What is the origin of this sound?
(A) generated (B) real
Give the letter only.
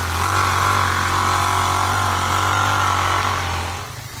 B